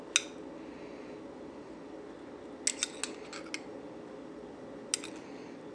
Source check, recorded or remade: recorded